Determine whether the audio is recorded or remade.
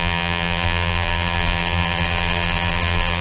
remade